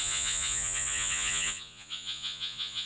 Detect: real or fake fake